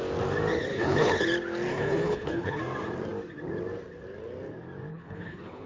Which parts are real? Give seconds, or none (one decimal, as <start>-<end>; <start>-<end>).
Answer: 0.0-0.7; 1.2-1.7; 2.6-4.9